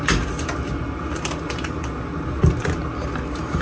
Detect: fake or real real